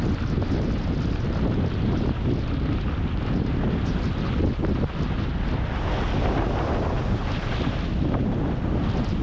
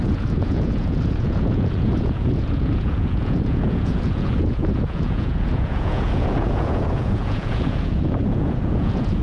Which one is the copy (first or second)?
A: second